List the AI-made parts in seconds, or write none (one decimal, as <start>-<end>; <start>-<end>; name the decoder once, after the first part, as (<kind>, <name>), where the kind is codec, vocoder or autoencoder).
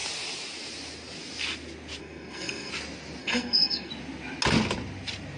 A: 2.0-2.7 (codec, SNAC); 3.2-3.9